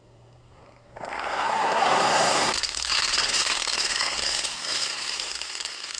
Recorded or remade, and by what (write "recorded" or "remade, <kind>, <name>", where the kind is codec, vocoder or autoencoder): remade, codec, SNAC